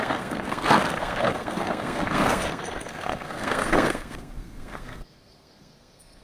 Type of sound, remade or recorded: remade